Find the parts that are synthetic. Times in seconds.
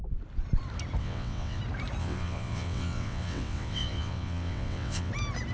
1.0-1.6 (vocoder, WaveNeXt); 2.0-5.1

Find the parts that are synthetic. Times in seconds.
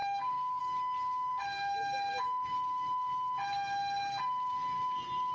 0.0-0.6 (codec, DAC)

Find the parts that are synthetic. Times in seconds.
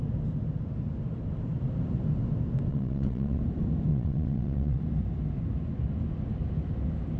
2.7-3.4 (vocoder, WaveNeXt); 3.9-4.8